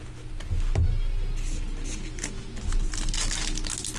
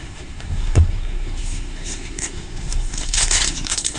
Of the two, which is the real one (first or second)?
first